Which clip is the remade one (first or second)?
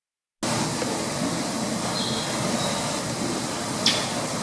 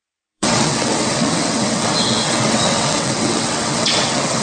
second